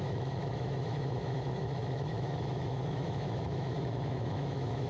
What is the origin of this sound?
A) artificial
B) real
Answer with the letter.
A